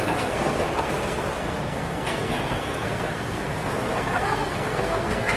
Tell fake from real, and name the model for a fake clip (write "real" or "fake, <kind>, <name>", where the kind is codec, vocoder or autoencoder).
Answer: fake, codec, SNAC